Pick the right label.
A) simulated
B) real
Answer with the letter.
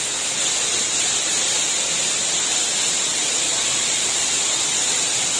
B